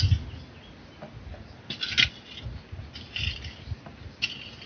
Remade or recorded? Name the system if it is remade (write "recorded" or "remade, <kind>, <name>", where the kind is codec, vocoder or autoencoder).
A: recorded